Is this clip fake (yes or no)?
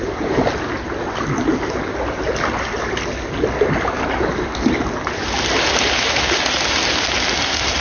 no